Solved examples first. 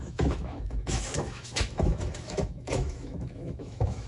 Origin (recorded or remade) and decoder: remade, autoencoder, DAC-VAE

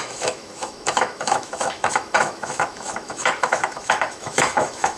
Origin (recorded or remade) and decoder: remade, autoencoder, DAC-VAE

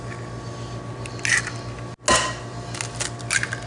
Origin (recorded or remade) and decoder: recorded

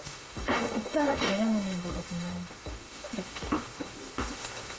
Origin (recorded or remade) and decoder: remade, autoencoder, DAC-VAE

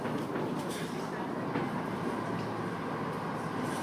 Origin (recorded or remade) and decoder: recorded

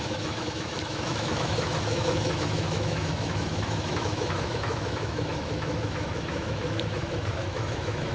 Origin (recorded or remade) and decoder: remade, autoencoder, DAC-VAE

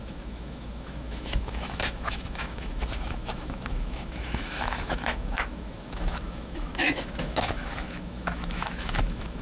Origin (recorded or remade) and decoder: remade, autoencoder, DAC-VAE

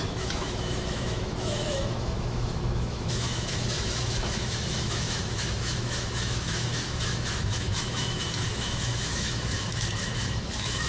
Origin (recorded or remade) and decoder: remade, autoencoder, DAC-VAE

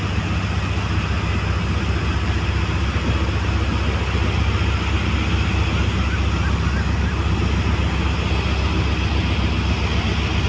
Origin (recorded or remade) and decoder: recorded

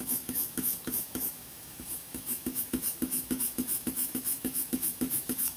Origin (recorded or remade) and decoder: remade, autoencoder, DAC-VAE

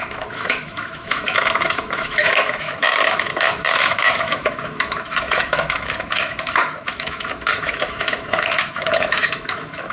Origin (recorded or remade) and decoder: remade, autoencoder, DAC-VAE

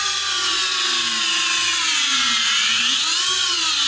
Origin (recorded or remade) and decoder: recorded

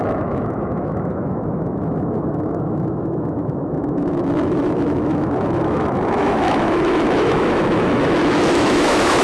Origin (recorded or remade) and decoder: remade, autoencoder, DAC-VAE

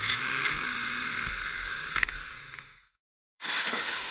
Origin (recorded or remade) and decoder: remade, autoencoder, DAC-VAE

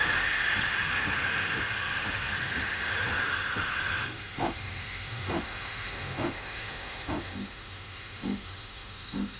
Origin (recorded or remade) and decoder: remade, autoencoder, DAC-VAE